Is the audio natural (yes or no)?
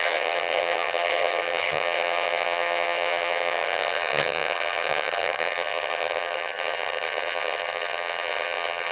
no